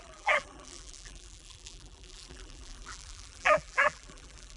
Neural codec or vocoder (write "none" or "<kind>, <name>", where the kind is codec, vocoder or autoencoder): vocoder, BigVGAN v2